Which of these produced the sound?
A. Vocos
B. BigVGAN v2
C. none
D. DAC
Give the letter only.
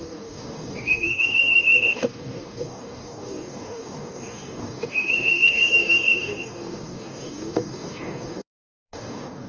D